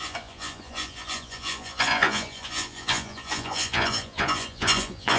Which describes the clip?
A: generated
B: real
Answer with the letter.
A